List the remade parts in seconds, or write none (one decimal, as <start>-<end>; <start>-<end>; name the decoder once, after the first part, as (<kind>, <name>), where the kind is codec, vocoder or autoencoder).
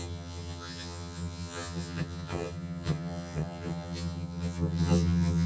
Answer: 0.0-5.5 (vocoder, HiFi-GAN)